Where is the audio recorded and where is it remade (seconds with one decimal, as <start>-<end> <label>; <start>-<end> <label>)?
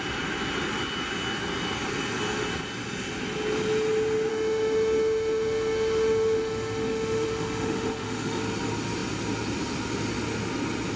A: 0.0-4.3 recorded; 4.3-8.4 remade; 8.4-11.0 recorded